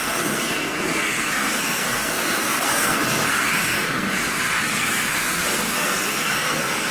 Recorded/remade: remade